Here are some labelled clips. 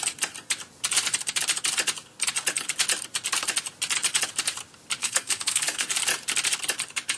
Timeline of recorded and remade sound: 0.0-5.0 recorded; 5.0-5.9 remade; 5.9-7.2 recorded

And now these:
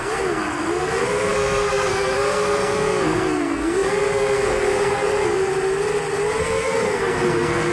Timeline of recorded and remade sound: 0.0-5.5 remade; 5.5-6.4 recorded; 6.4-7.7 remade

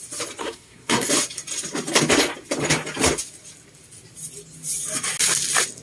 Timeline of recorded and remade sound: 0.0-0.4 recorded; 0.4-1.1 remade; 1.1-5.8 recorded

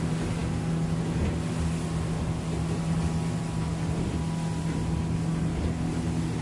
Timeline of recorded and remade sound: 0.0-6.4 recorded